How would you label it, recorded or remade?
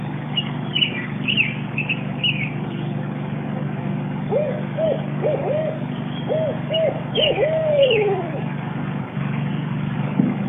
remade